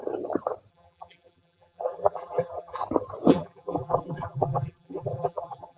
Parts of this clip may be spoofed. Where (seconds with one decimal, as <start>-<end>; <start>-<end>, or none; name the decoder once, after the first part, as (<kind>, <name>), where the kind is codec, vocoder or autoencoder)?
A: 0.7-2.8 (vocoder, BigVGAN v2); 3.3-5.8